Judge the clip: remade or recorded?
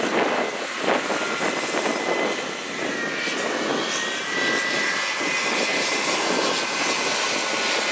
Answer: recorded